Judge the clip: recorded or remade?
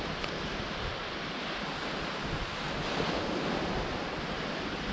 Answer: remade